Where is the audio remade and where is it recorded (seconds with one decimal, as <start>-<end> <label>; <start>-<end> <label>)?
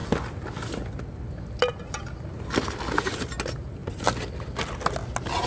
0.0-5.5 recorded